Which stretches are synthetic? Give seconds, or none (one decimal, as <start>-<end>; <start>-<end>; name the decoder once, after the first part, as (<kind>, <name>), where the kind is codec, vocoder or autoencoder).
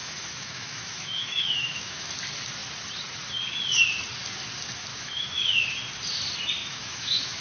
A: 0.0-2.1 (autoencoder, DAC-VAE); 4.9-5.6; 6.6-7.4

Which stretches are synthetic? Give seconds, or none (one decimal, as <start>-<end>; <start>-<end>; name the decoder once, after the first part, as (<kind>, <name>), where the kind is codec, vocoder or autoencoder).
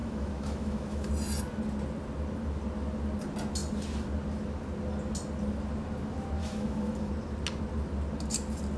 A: 0.0-1.1 (autoencoder, DAC-VAE); 6.4-7.1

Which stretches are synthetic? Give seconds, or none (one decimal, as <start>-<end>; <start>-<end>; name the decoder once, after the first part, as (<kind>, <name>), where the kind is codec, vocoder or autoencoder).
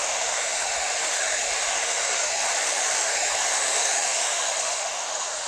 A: 0.0-5.5 (autoencoder, DAC-VAE)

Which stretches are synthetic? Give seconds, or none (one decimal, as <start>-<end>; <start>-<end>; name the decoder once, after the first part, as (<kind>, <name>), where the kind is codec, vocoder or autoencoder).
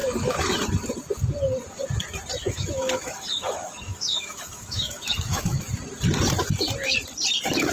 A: 2.4-5.7 (autoencoder, DAC-VAE)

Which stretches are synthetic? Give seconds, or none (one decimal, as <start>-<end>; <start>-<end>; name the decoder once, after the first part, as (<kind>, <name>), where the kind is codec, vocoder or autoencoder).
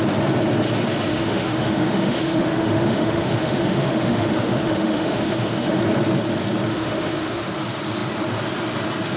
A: 1.1-5.8 (autoencoder, DAC-VAE); 6.7-7.5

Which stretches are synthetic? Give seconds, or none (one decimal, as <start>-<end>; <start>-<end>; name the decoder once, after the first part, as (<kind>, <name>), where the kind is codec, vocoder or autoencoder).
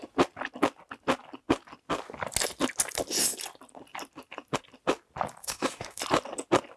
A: 5.4-6.0 (autoencoder, DAC-VAE)